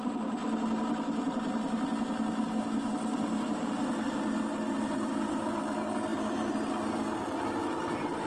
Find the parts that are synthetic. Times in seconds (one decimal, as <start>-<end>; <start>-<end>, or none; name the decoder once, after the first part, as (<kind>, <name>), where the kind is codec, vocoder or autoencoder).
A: none